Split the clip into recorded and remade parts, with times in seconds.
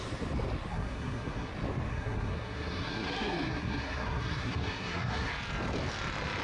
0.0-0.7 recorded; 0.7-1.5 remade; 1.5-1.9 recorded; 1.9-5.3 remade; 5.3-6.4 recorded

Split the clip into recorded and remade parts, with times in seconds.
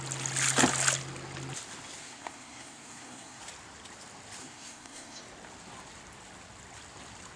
0.0-2.0 recorded; 2.0-3.4 remade; 3.4-4.4 recorded; 4.4-5.2 remade; 5.2-7.4 recorded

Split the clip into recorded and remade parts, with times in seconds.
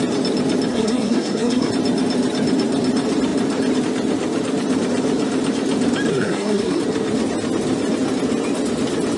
0.0-0.7 recorded; 0.7-1.7 remade; 1.7-6.1 recorded; 6.1-6.8 remade; 6.8-9.2 recorded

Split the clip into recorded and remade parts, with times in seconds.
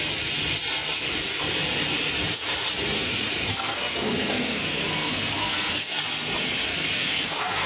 0.0-3.5 recorded; 3.5-6.0 remade; 6.0-6.7 recorded; 6.7-7.7 remade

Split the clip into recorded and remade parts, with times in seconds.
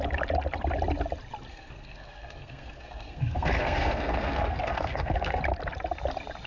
0.0-1.5 recorded; 1.5-5.4 remade; 5.4-6.5 recorded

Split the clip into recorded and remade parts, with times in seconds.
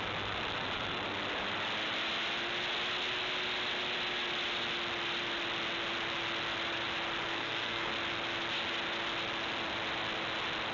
0.0-7.3 recorded; 7.3-7.9 remade; 7.9-10.7 recorded